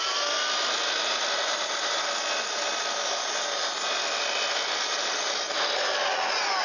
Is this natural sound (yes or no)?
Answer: yes